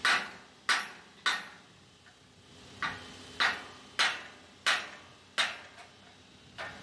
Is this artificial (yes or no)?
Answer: no